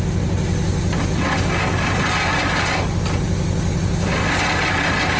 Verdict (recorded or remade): recorded